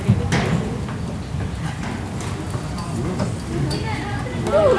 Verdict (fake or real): real